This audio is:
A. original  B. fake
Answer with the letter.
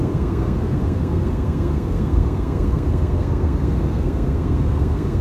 B